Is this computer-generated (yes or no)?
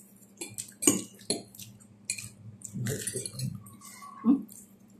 no